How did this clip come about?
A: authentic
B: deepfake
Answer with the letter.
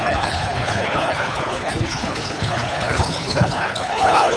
B